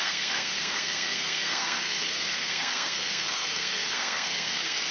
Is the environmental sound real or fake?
fake